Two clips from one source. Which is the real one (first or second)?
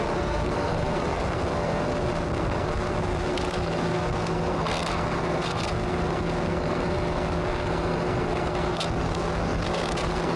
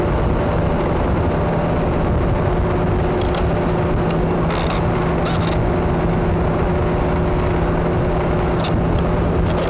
second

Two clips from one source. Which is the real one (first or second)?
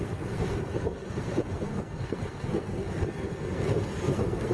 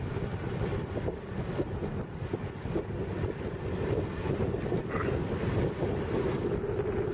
second